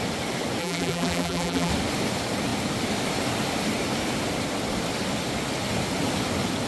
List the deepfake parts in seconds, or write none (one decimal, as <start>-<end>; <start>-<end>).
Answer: 0.6-1.7